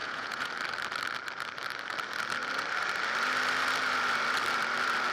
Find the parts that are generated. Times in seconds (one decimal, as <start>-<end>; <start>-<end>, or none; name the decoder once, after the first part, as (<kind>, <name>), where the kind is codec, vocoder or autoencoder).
0.0-0.5 (vocoder, Vocos)